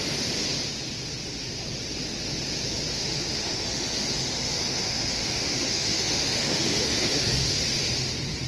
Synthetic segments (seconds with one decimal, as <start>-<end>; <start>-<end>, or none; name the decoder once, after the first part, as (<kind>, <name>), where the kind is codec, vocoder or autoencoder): 3.0-7.5 (autoencoder, DAC-VAE)